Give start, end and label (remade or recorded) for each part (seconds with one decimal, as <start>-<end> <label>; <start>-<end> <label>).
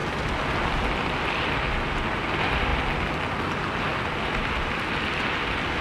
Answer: 0.0-5.8 recorded